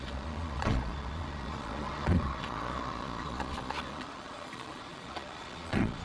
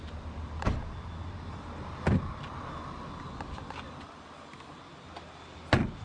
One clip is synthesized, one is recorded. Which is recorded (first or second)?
second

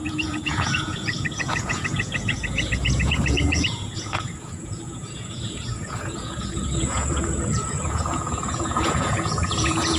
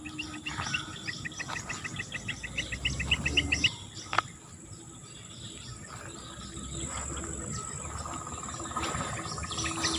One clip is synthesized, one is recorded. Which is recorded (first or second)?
second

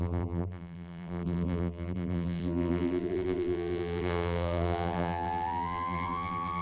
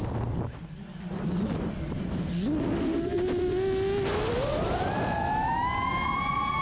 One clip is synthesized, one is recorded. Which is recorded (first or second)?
second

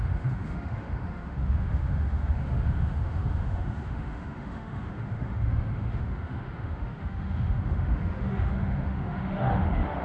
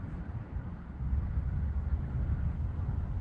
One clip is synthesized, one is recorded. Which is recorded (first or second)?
second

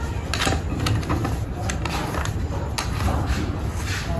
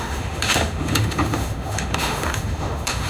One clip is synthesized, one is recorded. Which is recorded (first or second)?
first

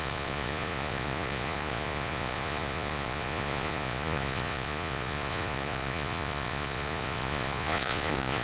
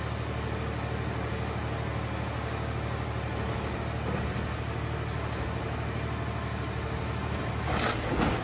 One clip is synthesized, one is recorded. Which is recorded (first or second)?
second